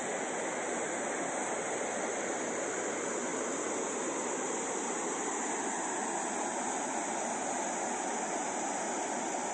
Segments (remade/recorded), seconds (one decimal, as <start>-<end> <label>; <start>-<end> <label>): 0.0-3.3 recorded; 3.3-4.5 remade; 4.5-9.5 recorded